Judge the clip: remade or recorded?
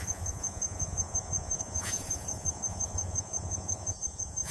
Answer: remade